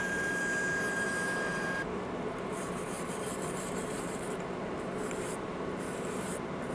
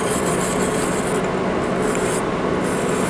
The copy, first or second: first